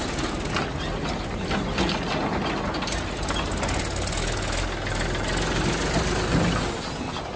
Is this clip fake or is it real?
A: real